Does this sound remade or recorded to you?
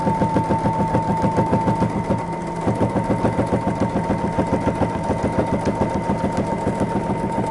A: recorded